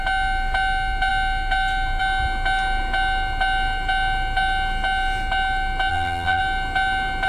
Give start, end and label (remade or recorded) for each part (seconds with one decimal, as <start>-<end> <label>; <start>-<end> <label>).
0.0-5.9 recorded; 5.9-6.4 remade; 6.4-7.3 recorded